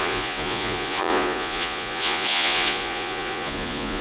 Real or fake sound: fake